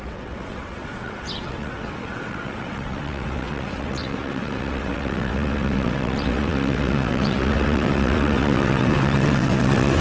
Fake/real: fake